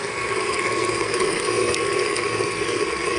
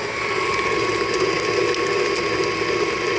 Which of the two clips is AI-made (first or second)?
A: first